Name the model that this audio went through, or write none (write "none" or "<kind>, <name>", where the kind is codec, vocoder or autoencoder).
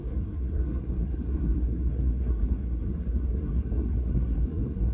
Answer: codec, SNAC